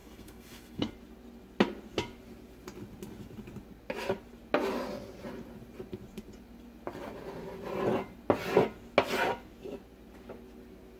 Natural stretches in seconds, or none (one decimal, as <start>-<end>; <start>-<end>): 0.9-11.0